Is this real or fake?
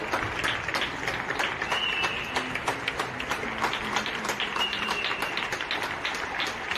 real